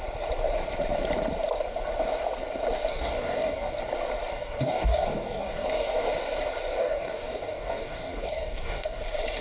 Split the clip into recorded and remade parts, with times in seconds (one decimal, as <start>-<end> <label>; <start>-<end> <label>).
0.0-2.9 recorded; 2.9-3.7 remade; 3.7-4.3 recorded; 4.3-6.1 remade; 6.1-6.8 recorded; 6.8-9.0 remade; 9.0-9.4 recorded